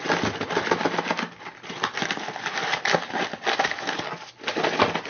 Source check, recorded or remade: recorded